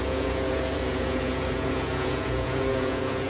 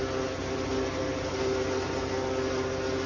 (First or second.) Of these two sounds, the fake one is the first